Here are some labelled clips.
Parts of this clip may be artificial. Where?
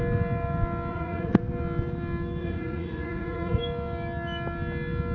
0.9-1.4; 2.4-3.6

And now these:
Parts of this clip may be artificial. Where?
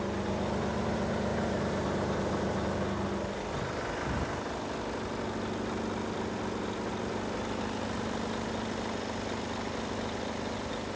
none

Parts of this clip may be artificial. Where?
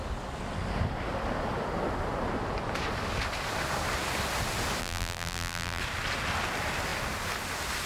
4.8-5.8